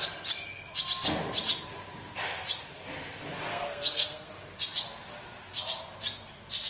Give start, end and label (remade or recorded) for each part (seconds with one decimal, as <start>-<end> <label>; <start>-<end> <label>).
0.0-3.5 recorded; 3.5-4.3 remade; 4.3-6.7 recorded